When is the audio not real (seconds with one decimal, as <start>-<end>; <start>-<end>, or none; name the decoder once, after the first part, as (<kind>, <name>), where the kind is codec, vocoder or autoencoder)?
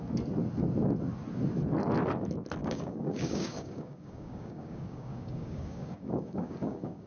2.6-7.1 (codec, DAC)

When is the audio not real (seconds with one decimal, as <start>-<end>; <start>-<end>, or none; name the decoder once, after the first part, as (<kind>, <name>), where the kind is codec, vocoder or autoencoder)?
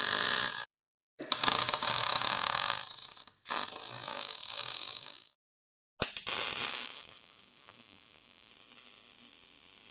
1.3-2.8 (codec, DAC); 4.1-5.8; 6.7-8.5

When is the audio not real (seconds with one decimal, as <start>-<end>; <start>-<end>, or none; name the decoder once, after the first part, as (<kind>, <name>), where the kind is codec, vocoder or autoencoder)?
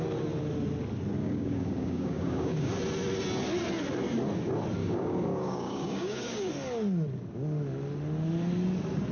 1.2-2.7 (codec, DAC); 4.8-6.5